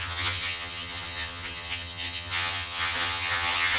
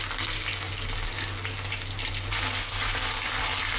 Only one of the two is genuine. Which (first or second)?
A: second